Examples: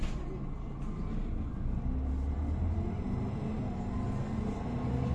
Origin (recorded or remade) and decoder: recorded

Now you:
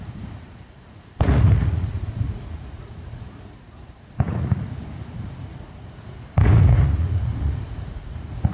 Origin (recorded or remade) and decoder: remade, vocoder, Vocos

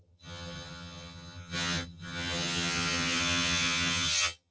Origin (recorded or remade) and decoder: remade, vocoder, HiFi-GAN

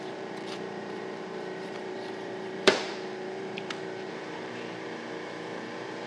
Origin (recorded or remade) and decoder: remade, vocoder, BigVGAN v2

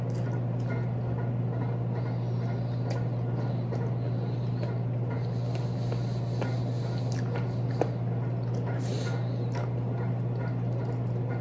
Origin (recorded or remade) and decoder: recorded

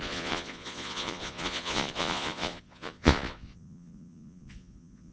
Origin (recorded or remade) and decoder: remade, vocoder, Vocos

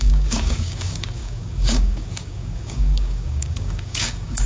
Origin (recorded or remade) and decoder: remade, codec, DAC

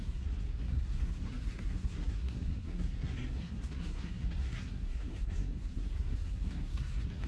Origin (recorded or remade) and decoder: remade, codec, SNAC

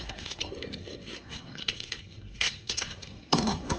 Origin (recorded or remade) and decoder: remade, codec, SNAC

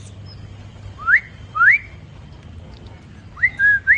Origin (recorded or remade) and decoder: recorded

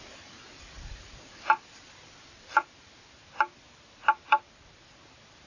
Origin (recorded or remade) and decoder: recorded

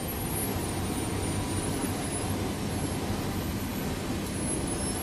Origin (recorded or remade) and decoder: recorded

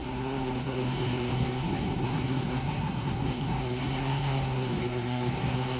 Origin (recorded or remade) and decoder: remade, codec, SNAC